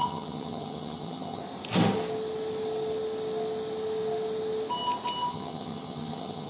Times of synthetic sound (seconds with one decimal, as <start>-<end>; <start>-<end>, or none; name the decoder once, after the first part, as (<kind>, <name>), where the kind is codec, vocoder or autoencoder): 0.0-1.4 (vocoder, HiFi-GAN); 5.3-6.5